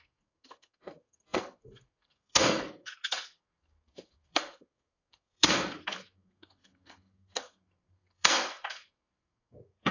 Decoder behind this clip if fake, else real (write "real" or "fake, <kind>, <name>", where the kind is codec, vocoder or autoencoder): fake, codec, SNAC